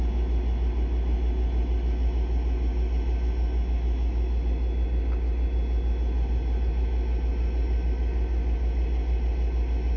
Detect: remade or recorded recorded